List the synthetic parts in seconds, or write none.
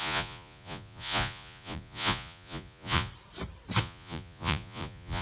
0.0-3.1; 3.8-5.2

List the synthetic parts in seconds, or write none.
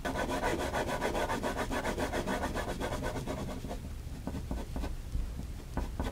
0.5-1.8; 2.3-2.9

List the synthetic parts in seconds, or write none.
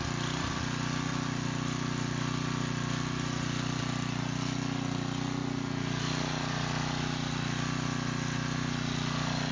none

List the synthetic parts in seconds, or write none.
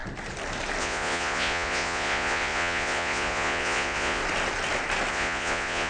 0.8-4.2; 5.1-5.9